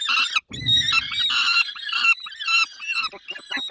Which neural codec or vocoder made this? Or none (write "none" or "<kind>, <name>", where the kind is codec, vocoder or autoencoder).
none